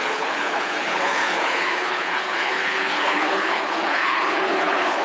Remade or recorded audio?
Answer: remade